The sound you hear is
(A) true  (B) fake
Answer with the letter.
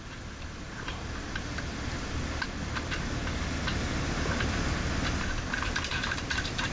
B